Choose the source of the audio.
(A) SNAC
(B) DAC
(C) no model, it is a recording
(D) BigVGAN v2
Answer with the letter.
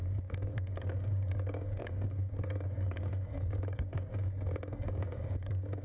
B